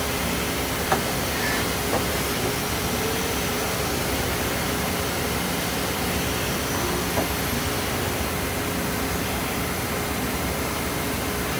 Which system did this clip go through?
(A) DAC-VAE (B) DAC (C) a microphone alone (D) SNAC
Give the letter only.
C